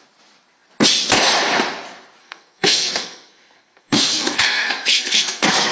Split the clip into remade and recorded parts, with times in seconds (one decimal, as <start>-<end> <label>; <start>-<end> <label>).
0.0-2.2 recorded; 2.2-5.7 remade

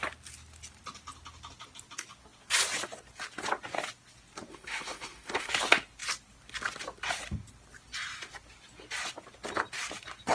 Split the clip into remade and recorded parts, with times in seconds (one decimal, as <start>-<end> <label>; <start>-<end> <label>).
0.0-4.5 recorded; 4.5-5.5 remade; 5.5-10.3 recorded

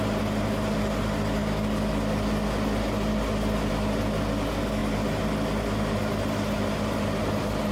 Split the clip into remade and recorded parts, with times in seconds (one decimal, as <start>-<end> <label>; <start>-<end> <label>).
0.0-7.7 recorded

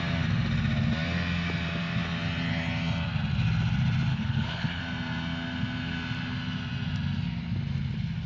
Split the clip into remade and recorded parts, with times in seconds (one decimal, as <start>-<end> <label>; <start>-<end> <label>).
0.0-4.1 recorded; 4.1-4.8 remade; 4.8-8.3 recorded

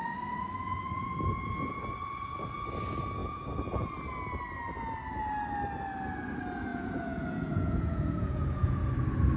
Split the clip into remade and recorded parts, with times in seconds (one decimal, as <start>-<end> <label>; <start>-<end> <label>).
0.0-3.2 recorded; 3.2-3.9 remade; 3.9-6.7 recorded; 6.7-8.9 remade; 8.9-9.4 recorded

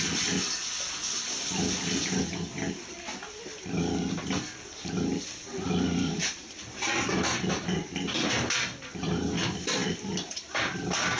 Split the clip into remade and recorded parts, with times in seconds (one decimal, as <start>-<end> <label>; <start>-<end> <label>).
0.0-5.1 recorded; 5.1-7.2 remade; 7.2-9.8 recorded; 9.8-11.2 remade